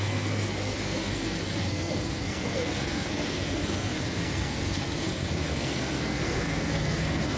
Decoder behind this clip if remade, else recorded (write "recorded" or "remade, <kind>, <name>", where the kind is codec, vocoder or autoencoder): remade, codec, SNAC